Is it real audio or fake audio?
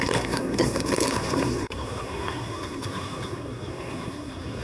fake